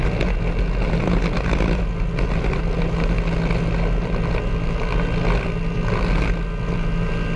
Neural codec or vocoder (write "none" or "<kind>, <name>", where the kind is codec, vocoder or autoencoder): none